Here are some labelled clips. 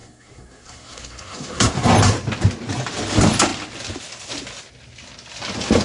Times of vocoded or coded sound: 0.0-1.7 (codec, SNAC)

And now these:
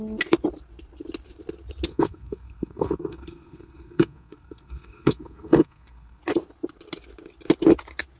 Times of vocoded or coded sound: 1.9-6.2 (codec, SNAC)

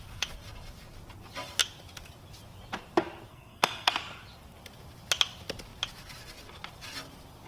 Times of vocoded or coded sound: 3.3-3.9 (codec, SNAC)

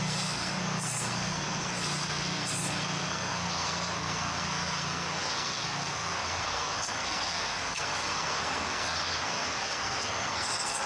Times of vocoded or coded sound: 0.0-10.9 (codec, SNAC)

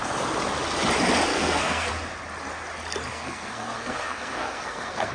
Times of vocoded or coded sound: 1.3-1.9 (codec, SNAC); 3.1-5.1

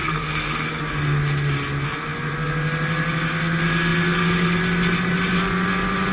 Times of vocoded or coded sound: 0.0-0.8 (codec, SNAC)

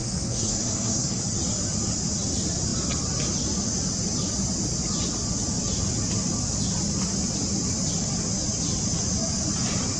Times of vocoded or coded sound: 0.0-1.2 (codec, SNAC)

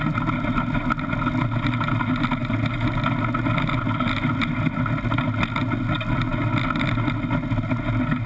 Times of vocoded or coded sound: none